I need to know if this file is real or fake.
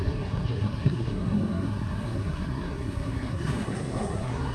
fake